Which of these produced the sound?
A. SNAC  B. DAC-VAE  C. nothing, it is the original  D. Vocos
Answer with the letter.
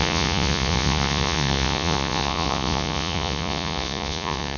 D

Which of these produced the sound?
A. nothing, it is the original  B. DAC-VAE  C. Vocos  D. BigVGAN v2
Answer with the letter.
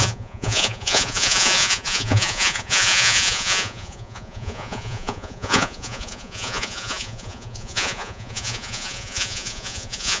C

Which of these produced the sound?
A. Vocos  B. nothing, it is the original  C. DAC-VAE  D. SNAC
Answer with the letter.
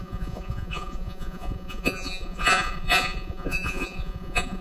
A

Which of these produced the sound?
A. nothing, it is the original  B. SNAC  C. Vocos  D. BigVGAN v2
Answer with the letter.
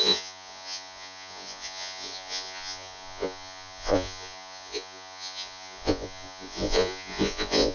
C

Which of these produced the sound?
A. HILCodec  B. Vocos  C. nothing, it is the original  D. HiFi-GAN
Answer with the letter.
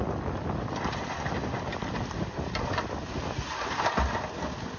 C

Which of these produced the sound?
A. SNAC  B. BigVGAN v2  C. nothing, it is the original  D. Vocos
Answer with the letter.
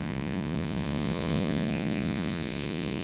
D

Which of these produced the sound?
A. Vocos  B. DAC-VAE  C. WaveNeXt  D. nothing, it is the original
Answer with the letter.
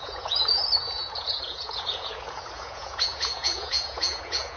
A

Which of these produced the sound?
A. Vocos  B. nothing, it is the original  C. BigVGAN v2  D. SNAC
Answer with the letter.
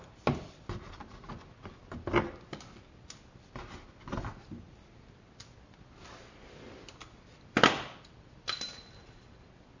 B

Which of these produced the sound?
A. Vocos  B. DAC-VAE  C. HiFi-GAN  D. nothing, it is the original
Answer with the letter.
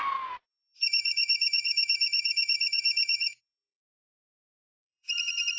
A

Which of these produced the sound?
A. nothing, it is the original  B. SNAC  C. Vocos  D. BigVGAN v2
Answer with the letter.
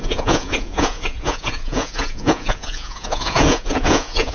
C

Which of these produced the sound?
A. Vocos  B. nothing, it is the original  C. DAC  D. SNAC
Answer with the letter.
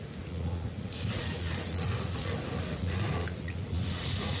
A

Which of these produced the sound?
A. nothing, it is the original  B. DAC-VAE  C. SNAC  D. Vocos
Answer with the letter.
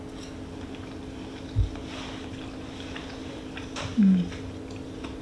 A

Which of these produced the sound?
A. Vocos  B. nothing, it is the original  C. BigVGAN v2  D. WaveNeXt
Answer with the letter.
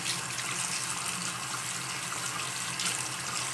B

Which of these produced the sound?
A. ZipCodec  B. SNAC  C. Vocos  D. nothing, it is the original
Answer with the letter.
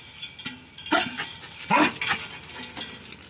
D